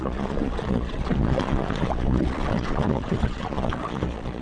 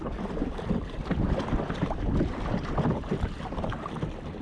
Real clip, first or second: second